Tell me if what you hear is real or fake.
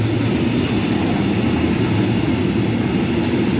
real